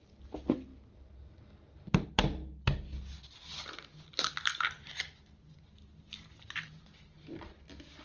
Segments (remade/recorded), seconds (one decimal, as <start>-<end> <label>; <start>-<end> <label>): 0.0-8.0 recorded